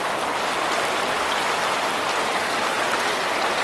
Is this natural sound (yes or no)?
yes